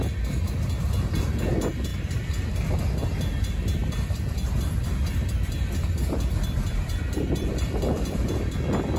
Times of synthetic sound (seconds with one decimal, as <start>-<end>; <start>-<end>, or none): 3.8-8.6